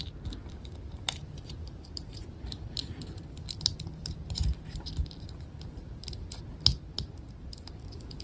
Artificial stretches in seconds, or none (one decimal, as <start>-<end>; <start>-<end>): 1.2-6.1

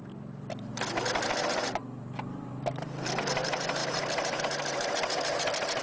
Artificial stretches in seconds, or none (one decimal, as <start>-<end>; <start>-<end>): 0.0-0.7; 1.4-5.8

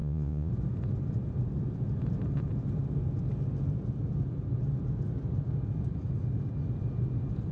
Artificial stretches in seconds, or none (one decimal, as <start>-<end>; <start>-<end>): 0.0-0.5

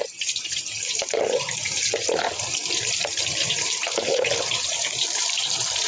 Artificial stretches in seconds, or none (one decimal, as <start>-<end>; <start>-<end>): 0.0-5.9